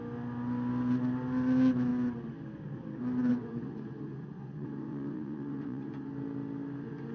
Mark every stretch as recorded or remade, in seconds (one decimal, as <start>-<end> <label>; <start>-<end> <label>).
0.0-3.3 recorded; 3.3-6.1 remade; 6.1-7.1 recorded